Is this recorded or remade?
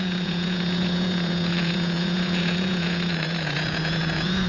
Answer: remade